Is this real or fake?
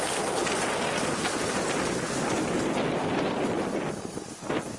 real